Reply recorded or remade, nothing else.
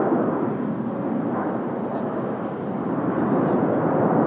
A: recorded